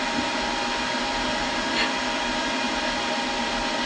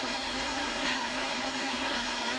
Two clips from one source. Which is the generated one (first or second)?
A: second